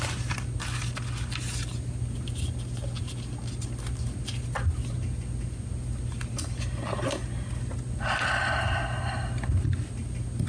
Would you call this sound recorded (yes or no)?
yes